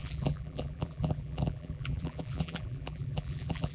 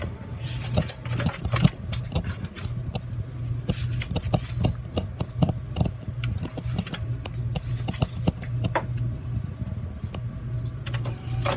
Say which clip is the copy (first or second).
first